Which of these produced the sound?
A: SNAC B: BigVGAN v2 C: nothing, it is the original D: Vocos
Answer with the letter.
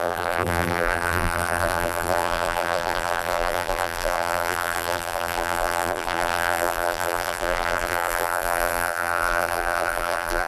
B